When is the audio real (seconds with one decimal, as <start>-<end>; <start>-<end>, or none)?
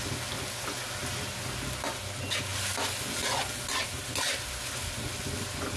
0.0-5.8